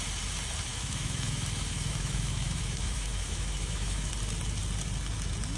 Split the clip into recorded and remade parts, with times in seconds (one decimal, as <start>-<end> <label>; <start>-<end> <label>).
0.0-0.7 recorded; 0.7-4.1 remade; 4.1-5.6 recorded